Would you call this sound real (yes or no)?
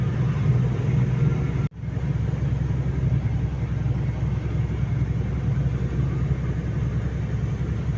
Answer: yes